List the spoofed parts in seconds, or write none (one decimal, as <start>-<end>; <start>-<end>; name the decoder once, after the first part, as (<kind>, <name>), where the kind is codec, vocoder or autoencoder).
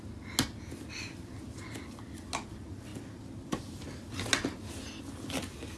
none